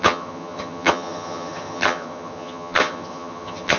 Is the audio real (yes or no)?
no